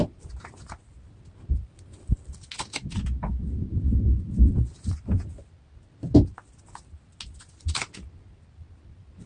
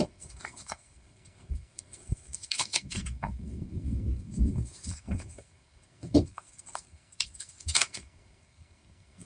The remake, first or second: second